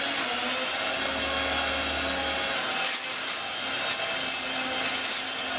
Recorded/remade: recorded